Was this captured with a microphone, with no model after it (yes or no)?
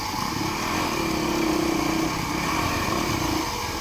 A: yes